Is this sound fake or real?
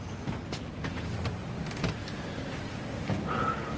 real